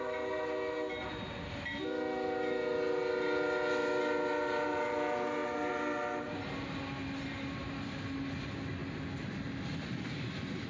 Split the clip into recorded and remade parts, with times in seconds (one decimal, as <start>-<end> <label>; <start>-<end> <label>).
0.0-10.7 recorded